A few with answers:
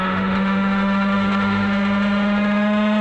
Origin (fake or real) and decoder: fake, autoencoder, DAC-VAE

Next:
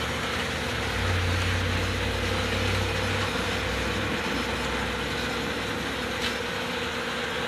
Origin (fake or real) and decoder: real